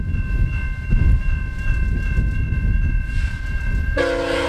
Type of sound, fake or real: real